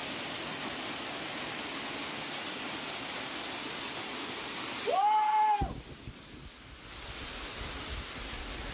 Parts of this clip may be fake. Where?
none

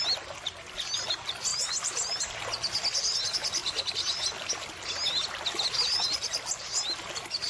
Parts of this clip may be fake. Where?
1.5-2.3 (vocoder, BigVGAN v2)

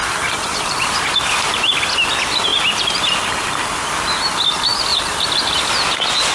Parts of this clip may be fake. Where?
0.0-0.9 (vocoder, BigVGAN v2); 4.9-5.7

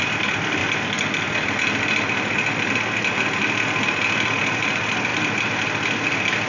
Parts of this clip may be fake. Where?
0.0-0.6 (vocoder, BigVGAN v2); 3.8-5.1

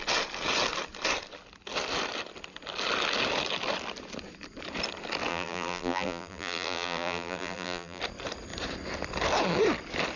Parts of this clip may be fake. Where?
5.3-8.0 (vocoder, BigVGAN v2)